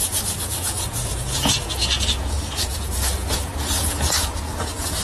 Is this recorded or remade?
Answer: remade